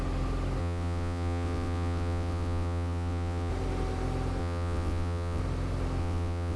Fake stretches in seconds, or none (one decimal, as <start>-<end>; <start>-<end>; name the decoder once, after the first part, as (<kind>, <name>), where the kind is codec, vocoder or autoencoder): 0.6-3.5 (vocoder, WaveNeXt); 4.4-5.4; 6.0-6.6